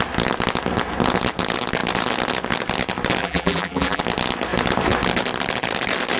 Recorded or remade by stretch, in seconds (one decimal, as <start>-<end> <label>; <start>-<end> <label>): 0.0-3.2 recorded; 3.2-4.0 remade; 4.0-6.2 recorded